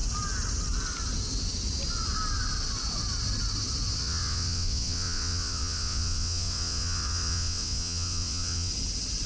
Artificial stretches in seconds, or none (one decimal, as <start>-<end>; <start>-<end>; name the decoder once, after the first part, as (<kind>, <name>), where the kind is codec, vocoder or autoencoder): 4.0-8.7 (vocoder, WaveNeXt)